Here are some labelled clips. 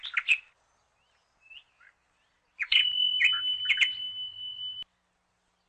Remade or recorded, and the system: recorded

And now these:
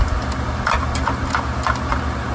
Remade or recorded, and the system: recorded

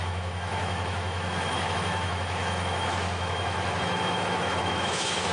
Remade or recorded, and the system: remade, autoencoder, DAC-VAE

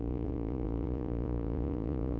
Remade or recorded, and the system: remade, vocoder, Vocos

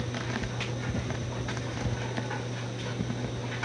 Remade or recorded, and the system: recorded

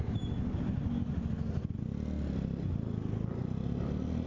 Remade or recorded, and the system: recorded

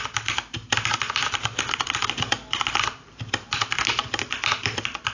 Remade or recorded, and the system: recorded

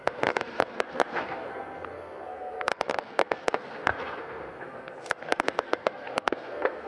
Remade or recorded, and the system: remade, codec, SNAC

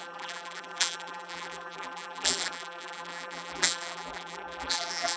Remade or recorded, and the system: remade, vocoder, BigVGAN v2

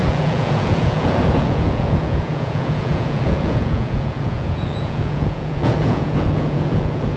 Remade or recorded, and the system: remade, vocoder, Vocos